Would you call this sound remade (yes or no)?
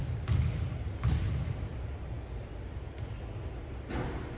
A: no